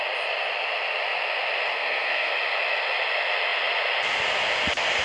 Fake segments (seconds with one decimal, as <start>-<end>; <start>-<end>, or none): 1.7-2.3